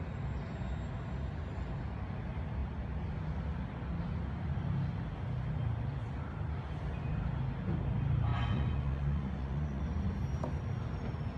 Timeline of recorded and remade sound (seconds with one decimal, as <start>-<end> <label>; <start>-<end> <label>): 0.0-8.3 recorded; 8.3-9.8 remade; 9.8-11.4 recorded